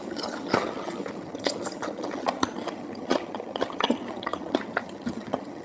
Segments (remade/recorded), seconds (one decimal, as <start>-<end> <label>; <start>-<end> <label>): 0.0-5.6 remade